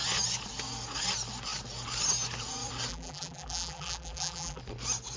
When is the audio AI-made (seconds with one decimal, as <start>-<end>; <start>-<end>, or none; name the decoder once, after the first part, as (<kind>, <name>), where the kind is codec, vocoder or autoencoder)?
2.9-4.6 (vocoder, BigVGAN v2)